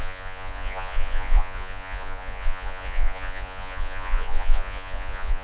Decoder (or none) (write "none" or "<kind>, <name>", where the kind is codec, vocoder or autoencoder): vocoder, Vocos